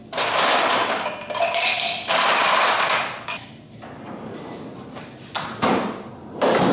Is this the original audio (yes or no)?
yes